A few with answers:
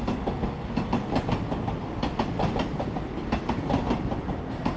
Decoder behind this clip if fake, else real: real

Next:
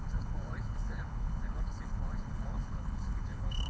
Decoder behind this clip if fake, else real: fake, codec, HILCodec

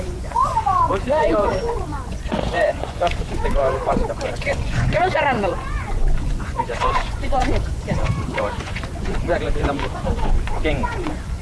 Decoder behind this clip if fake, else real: fake, vocoder, Vocos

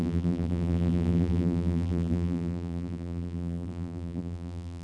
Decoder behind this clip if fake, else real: fake, vocoder, BigVGAN v2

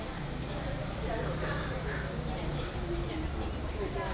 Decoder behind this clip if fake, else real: real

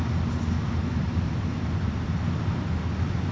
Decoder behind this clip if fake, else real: real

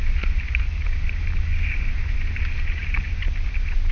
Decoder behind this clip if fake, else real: real